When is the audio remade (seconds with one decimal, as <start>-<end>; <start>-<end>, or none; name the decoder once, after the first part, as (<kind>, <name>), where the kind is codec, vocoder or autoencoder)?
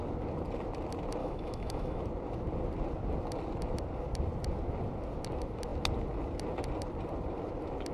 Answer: 1.2-2.0 (autoencoder, DAC-VAE)